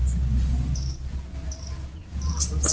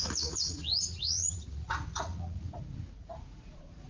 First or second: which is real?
first